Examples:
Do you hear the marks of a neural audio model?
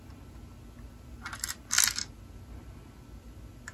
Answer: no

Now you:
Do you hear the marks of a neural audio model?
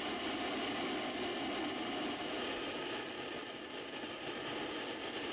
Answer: no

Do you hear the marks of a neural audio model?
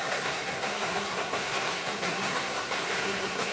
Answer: yes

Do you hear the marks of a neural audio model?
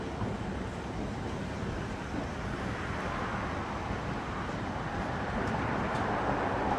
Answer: no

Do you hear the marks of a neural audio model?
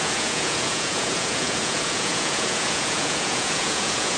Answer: yes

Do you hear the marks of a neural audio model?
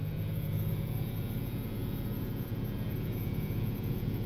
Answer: yes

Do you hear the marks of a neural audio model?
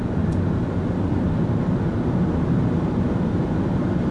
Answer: no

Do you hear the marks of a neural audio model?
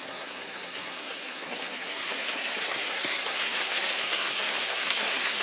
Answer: yes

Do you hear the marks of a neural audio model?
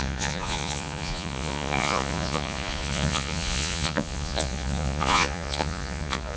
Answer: yes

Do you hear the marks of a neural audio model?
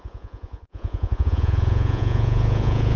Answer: yes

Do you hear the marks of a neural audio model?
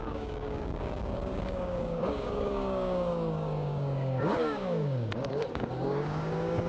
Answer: yes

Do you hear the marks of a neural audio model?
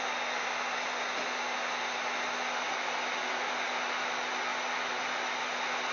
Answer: no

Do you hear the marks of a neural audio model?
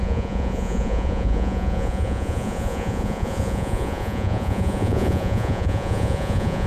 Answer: yes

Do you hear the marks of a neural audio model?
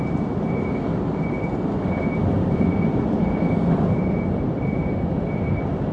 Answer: yes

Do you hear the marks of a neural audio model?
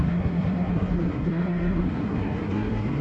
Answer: yes